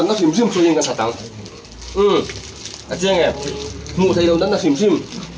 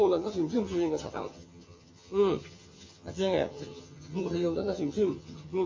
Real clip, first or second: first